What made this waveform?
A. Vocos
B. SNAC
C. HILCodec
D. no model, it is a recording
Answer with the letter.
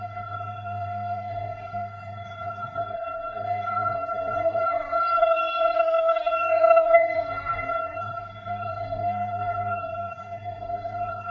B